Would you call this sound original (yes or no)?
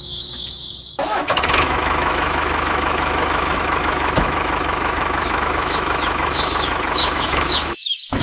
no